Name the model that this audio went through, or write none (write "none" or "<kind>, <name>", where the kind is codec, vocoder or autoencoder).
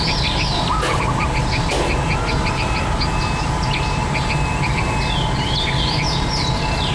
none